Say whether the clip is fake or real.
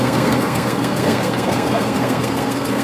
fake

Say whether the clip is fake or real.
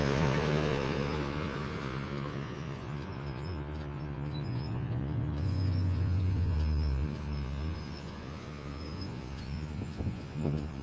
fake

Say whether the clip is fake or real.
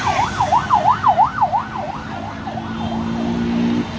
real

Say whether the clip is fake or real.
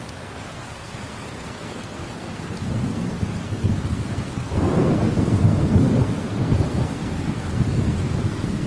fake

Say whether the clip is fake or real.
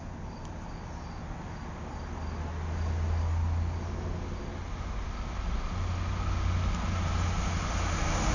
real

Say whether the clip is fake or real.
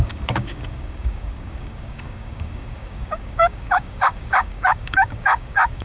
fake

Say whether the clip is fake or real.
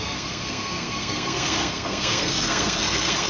fake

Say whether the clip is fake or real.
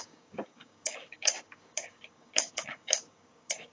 fake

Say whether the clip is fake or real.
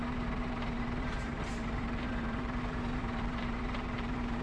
fake